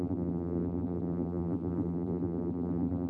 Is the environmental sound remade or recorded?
remade